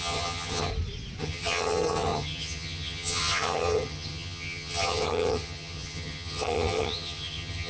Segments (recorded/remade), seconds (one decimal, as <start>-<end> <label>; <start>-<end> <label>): 0.0-0.7 remade; 0.7-1.2 recorded; 1.2-7.7 remade